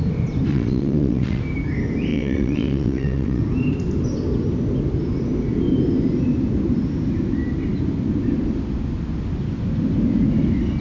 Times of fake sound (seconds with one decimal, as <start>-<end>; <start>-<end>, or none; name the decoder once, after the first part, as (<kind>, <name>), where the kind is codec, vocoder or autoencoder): 0.5-1.4 (vocoder, WaveNeXt); 2.1-3.4